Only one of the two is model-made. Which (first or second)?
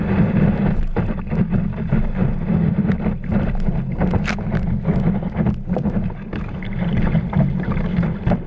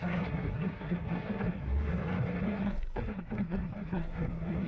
second